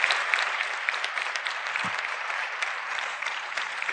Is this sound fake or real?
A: fake